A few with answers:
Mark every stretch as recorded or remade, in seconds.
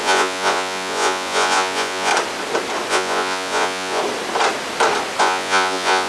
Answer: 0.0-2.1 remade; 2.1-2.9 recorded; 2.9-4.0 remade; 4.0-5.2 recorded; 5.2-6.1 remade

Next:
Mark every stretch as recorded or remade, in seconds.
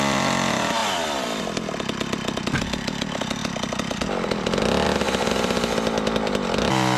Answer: 0.0-7.0 recorded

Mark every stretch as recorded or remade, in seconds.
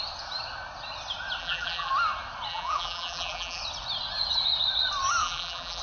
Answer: 0.0-1.4 recorded; 1.4-1.9 remade; 1.9-2.5 recorded; 2.5-3.6 remade; 3.6-5.2 recorded; 5.2-5.8 remade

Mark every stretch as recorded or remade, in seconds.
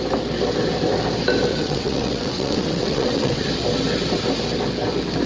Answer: 0.0-1.5 recorded; 1.5-3.5 remade; 3.5-5.3 recorded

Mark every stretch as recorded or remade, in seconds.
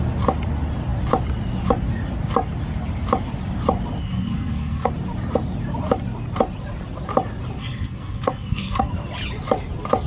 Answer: 0.0-4.0 recorded; 4.0-4.9 remade; 4.9-7.6 recorded; 7.6-8.9 remade; 8.9-10.1 recorded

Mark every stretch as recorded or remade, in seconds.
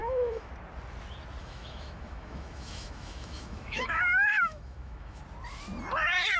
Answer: 0.0-0.5 remade; 0.5-1.4 recorded; 1.4-5.2 remade; 5.2-6.4 recorded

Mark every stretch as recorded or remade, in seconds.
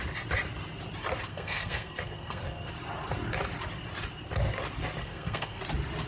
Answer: 0.0-1.3 recorded; 1.3-2.7 remade; 2.7-5.0 recorded; 5.0-5.6 remade; 5.6-6.1 recorded